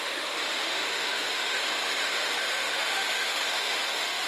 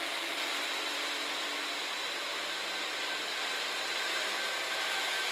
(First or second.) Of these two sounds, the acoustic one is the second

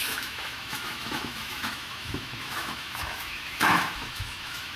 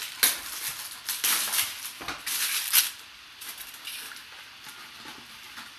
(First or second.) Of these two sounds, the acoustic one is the second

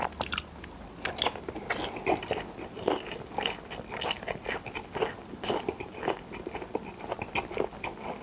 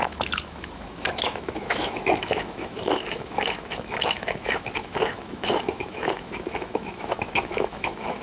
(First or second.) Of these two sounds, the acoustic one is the first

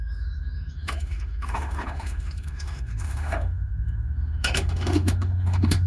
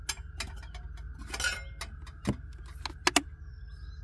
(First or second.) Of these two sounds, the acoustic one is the second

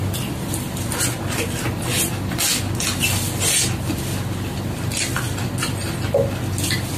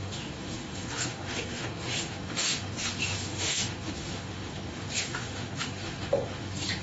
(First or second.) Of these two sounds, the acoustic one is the first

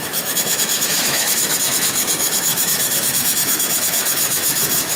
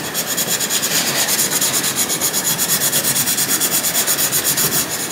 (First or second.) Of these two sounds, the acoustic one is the second